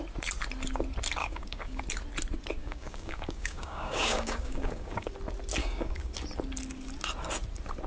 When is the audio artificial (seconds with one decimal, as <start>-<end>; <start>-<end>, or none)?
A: 1.2-1.8; 2.6-5.1; 5.6-6.1